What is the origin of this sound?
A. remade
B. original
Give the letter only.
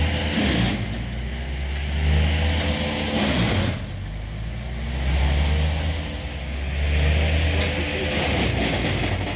B